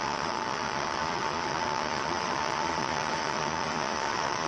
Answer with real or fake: fake